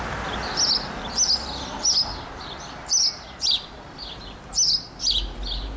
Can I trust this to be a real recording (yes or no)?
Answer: yes